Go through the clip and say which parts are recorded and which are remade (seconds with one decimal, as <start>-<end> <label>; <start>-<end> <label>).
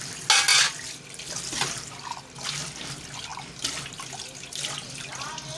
0.0-5.6 recorded